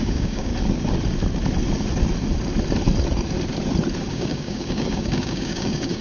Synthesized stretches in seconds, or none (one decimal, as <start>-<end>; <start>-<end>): 0.0-0.5; 4.1-6.0